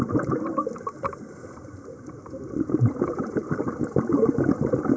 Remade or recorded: recorded